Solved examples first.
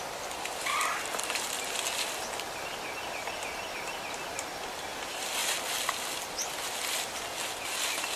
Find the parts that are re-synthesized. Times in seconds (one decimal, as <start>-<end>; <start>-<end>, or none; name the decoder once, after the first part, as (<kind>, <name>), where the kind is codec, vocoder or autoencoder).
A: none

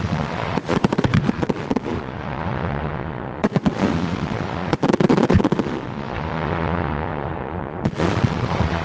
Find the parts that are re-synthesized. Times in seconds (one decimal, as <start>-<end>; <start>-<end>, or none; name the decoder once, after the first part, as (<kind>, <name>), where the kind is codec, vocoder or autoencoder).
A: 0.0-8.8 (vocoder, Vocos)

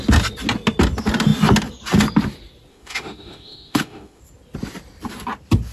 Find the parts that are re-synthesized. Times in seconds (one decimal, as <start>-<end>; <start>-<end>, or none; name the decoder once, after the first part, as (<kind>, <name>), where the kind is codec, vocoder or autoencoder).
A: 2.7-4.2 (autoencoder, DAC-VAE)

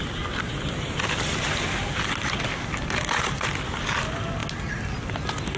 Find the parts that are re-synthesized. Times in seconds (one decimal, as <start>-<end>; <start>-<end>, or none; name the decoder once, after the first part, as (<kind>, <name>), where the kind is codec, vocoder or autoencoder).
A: none

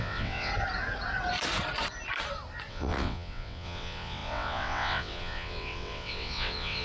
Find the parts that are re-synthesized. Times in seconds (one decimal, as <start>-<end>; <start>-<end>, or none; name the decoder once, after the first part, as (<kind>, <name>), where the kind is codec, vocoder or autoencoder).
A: 0.0-0.5 (vocoder, WaveNeXt); 2.7-6.8

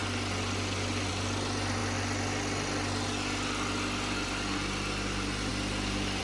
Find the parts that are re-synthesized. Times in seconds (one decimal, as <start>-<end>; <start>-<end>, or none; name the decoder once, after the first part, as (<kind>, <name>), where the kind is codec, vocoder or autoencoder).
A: none